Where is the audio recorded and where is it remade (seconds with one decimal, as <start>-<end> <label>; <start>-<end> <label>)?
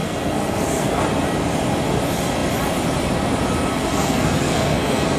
0.0-1.0 remade; 1.0-3.7 recorded; 3.7-5.2 remade